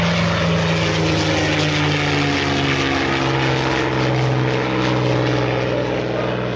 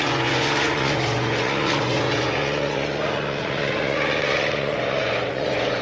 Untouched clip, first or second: first